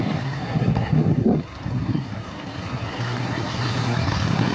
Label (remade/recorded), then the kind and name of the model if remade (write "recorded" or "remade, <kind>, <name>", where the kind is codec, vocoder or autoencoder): remade, codec, SNAC